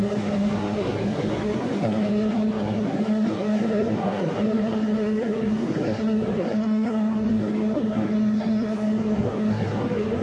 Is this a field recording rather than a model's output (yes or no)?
no